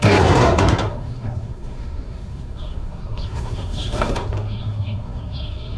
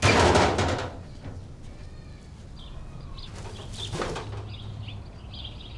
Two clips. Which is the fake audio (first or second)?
first